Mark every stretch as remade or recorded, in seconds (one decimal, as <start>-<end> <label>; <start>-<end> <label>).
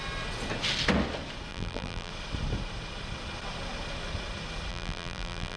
0.0-1.5 recorded; 1.5-2.1 remade; 2.1-4.7 recorded; 4.7-5.6 remade